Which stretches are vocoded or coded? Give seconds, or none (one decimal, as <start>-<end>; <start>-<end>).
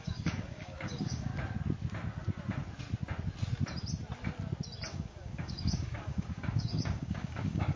0.0-1.3; 4.9-7.8